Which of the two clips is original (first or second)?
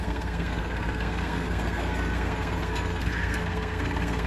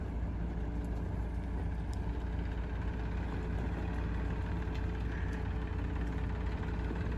second